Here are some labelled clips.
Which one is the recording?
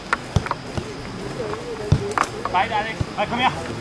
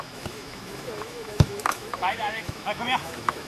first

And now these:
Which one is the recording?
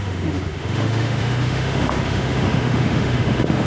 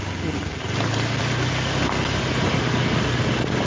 second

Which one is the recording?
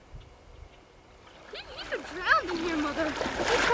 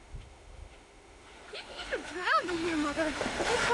first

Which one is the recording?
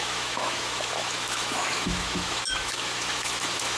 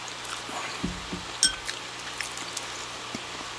second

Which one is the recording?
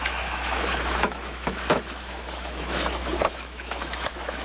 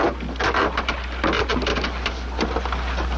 second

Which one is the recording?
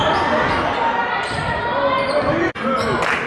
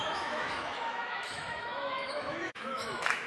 first